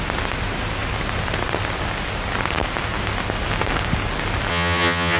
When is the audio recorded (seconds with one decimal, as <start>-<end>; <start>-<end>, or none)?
0.0-4.5